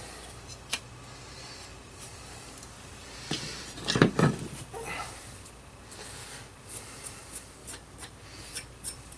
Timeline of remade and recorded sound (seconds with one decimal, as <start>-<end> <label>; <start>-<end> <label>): 0.0-1.7 recorded; 1.7-5.5 remade; 5.5-9.2 recorded